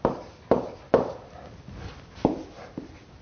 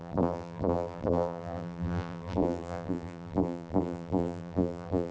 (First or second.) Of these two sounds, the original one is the first